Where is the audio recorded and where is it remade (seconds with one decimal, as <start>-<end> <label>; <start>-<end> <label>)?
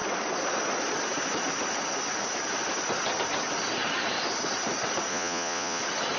0.0-5.1 recorded; 5.1-5.8 remade; 5.8-6.2 recorded